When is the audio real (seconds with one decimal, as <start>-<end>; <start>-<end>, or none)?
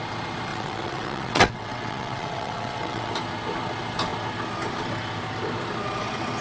0.0-0.5; 3.1-6.4